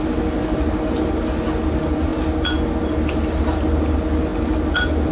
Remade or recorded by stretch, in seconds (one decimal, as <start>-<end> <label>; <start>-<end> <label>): 0.0-5.1 recorded